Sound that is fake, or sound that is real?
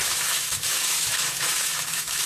fake